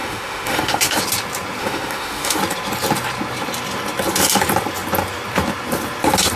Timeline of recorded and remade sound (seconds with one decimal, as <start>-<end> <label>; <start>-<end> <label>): 0.0-1.0 remade; 1.0-1.6 recorded; 1.6-2.4 remade; 2.4-6.4 recorded